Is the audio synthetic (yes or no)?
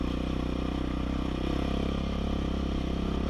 no